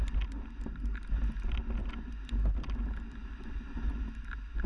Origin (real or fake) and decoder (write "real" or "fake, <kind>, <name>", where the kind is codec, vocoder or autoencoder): real